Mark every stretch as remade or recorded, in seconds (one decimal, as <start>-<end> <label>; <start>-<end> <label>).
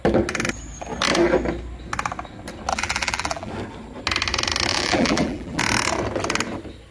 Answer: 0.0-2.7 recorded; 2.7-3.5 remade; 3.5-4.7 recorded; 4.7-5.6 remade; 5.6-6.9 recorded